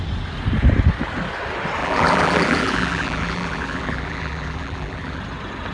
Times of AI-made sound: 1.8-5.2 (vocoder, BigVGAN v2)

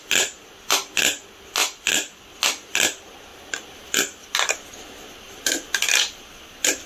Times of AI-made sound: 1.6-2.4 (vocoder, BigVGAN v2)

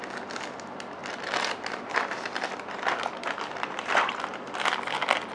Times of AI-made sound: none

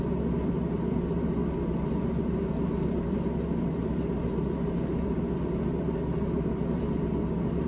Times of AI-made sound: none